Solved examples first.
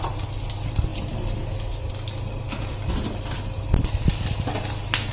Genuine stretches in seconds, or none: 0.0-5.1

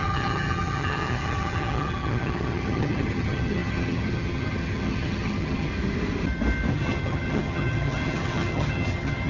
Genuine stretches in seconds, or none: 5.7-6.7

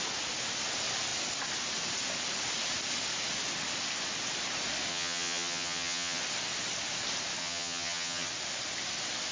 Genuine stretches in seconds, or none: 0.0-4.9; 6.2-7.4; 8.3-9.3

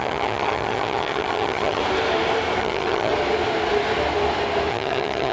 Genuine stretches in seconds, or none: 1.8-2.6; 3.1-4.7

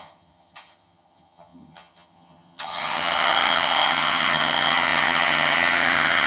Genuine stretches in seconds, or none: none

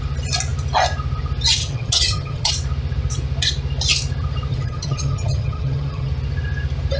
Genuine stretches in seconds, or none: 0.0-1.6; 2.5-4.5; 6.1-7.0